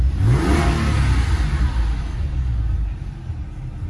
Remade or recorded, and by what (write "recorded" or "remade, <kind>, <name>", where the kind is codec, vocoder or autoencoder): recorded